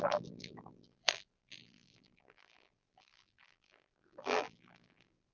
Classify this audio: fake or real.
fake